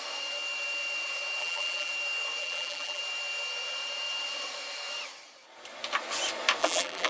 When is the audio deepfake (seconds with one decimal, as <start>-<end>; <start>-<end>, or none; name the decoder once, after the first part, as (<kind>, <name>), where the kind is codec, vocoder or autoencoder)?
1.4-1.9 (vocoder, BigVGAN v2); 2.4-3.0; 6.6-7.1